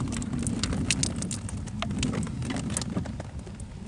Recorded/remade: recorded